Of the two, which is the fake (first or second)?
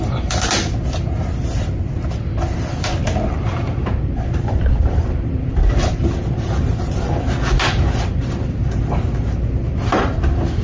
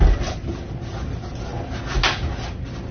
first